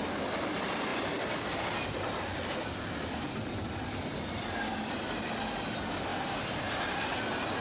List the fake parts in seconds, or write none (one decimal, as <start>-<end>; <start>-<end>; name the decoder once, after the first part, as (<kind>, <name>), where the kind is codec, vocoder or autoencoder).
none